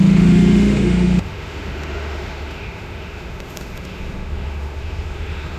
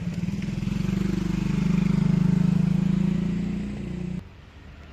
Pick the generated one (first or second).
first